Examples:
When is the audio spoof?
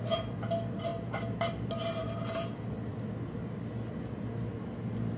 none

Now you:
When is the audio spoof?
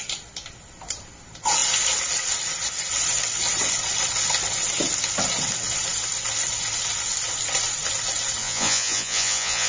8.4-9.7 (vocoder, Vocos)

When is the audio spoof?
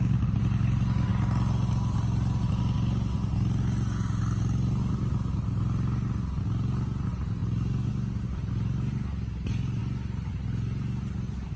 none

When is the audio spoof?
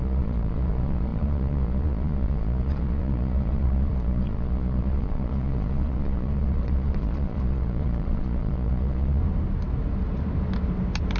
0.0-9.2 (vocoder, Vocos)